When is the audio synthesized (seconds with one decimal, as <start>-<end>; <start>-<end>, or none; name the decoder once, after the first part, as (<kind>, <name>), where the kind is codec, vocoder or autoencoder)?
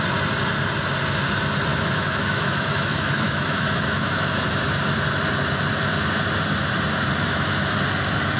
1.7-4.5 (autoencoder, DAC-VAE); 7.2-7.8